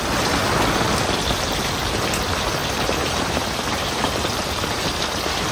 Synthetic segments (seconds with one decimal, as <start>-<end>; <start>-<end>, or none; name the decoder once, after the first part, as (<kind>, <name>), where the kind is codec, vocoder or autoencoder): 2.6-4.9 (vocoder, BigVGAN v2)